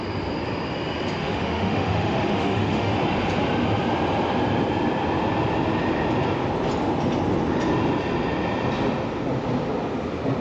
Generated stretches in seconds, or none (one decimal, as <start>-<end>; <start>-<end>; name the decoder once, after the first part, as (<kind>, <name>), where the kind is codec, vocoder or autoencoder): 1.2-2.9 (autoencoder, DAC-VAE)